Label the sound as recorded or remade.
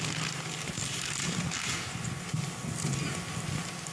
recorded